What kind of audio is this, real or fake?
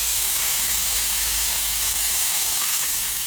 fake